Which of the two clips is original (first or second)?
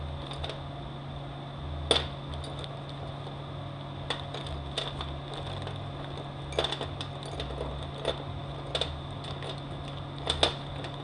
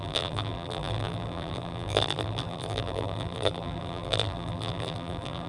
first